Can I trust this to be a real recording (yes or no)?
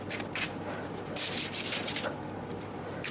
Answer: yes